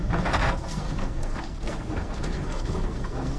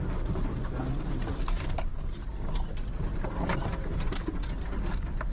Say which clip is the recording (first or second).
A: second